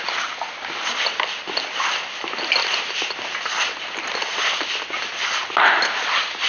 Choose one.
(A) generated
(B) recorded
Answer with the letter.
B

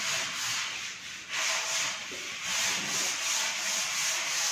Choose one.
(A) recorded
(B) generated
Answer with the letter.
A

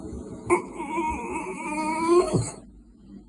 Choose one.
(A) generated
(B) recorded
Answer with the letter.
A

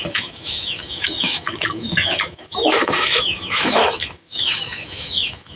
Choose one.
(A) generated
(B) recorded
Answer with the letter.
A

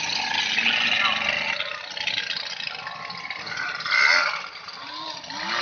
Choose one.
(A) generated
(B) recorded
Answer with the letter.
B